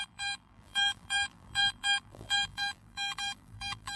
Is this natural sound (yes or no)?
no